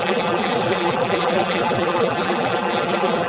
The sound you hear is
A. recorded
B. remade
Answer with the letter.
B